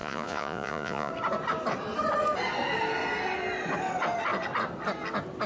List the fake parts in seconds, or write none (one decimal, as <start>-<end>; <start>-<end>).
0.0-1.1